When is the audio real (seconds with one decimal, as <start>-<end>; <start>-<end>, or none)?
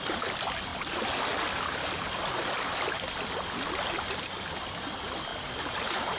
0.0-5.3